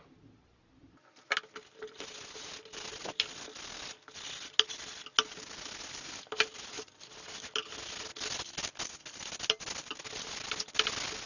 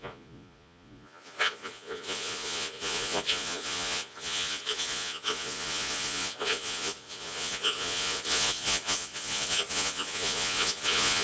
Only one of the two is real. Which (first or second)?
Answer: first